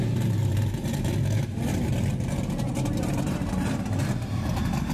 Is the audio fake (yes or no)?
yes